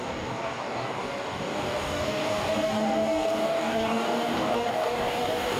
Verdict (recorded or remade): remade